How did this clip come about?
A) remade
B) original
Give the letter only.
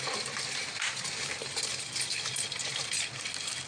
B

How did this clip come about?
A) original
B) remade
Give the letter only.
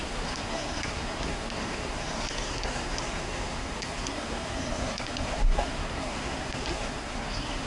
B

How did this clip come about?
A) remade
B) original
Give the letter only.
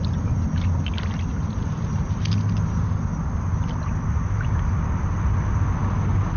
B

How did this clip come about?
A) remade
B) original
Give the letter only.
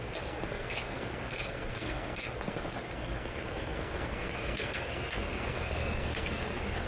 A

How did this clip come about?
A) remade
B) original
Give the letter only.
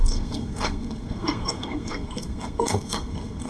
A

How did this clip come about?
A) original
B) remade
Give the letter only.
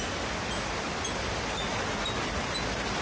A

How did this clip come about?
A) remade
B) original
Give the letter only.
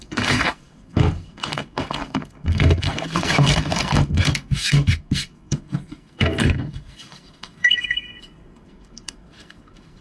A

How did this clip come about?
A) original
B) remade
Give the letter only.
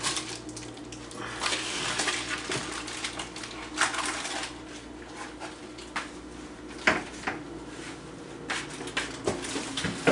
A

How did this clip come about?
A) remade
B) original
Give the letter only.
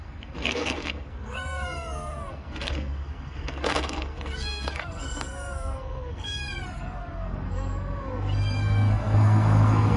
A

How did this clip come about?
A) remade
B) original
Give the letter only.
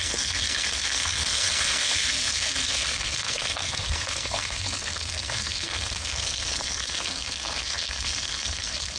A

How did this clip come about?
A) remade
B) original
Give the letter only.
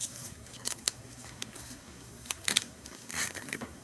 A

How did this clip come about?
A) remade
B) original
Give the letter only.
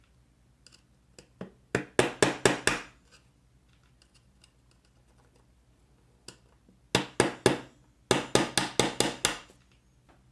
B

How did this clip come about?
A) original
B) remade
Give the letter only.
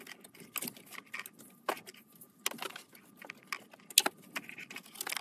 A